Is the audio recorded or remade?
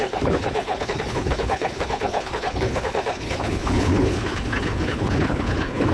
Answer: remade